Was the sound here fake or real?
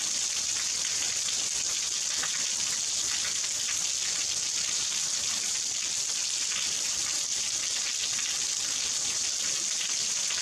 real